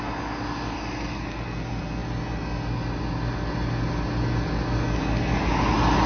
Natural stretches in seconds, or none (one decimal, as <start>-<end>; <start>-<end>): 0.0-6.1